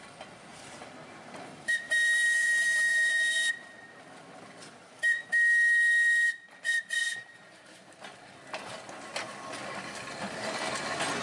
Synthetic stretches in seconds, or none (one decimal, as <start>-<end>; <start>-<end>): 0.5-3.5; 7.1-7.8